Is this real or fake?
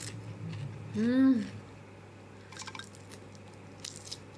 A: real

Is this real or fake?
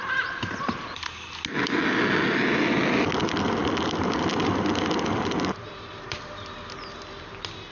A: real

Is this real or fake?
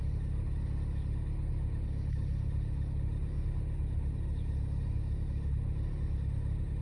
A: real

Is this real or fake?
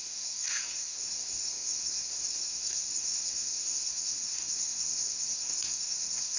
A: fake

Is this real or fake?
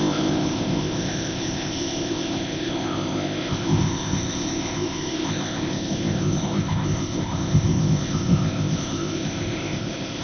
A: fake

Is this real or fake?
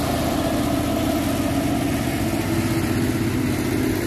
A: real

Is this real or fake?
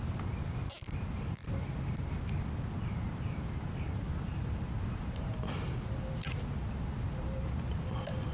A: fake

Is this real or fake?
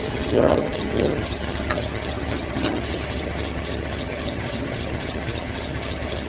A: fake